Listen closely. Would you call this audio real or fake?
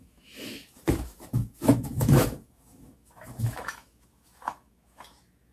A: fake